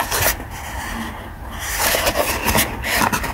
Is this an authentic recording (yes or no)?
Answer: yes